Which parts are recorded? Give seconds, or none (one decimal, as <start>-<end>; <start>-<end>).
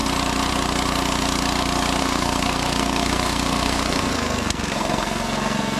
0.0-2.0